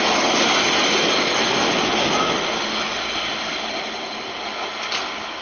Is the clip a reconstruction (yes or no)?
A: no